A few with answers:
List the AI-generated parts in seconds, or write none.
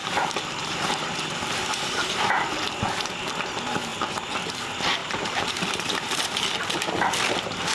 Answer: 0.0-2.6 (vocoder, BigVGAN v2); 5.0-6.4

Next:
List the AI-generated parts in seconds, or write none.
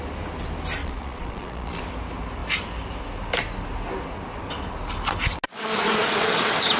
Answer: 0.8-1.8 (vocoder, Vocos)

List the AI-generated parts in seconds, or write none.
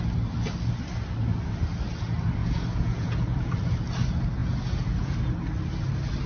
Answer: 2.4-3.5 (vocoder, Vocos); 4.4-5.3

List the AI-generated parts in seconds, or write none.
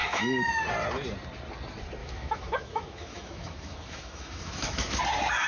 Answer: 0.0-0.6 (autoencoder, DAC-VAE); 2.0-5.0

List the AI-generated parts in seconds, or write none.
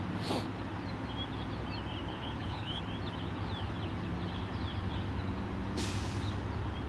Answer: 2.1-2.8 (codec, HILCodec)